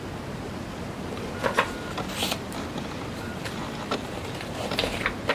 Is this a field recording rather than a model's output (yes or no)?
yes